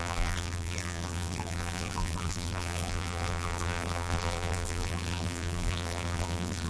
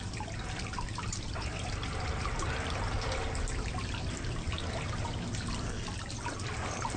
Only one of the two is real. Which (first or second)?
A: second